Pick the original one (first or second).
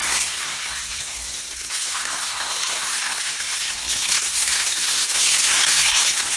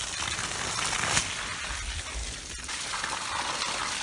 second